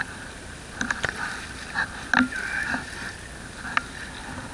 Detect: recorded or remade recorded